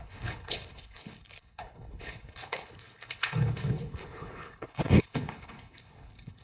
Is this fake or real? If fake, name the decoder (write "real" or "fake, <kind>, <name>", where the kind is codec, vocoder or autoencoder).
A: fake, codec, HILCodec